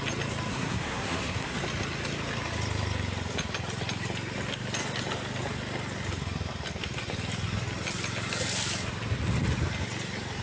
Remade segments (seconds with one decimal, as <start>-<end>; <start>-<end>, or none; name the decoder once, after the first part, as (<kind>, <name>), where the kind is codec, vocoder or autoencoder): 0.5-1.6 (codec, SNAC)